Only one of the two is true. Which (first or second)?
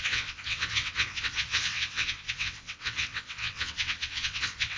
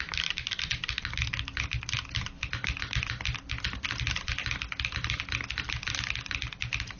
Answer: second